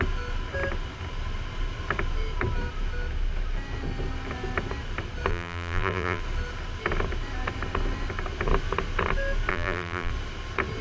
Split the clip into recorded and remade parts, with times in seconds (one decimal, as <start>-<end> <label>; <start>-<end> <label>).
0.0-5.3 recorded; 5.3-6.2 remade; 6.2-9.5 recorded; 9.5-10.1 remade; 10.1-10.8 recorded